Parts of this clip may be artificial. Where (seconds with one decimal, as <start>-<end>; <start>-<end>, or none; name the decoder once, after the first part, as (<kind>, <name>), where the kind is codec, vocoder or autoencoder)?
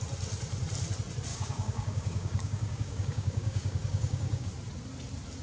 1.3-4.5 (codec, DAC)